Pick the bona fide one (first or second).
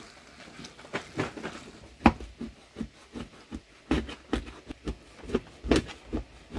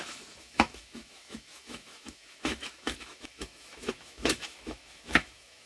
first